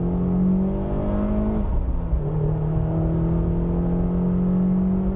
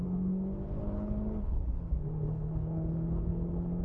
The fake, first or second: second